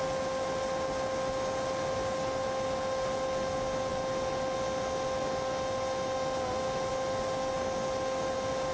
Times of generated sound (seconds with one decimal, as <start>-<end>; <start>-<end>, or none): none